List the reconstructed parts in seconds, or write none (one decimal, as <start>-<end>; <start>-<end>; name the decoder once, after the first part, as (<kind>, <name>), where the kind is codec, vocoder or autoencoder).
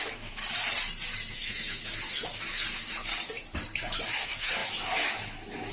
0.0-0.4 (autoencoder, DAC-VAE); 1.3-3.1; 4.1-5.7